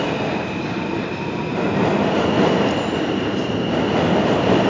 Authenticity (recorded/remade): recorded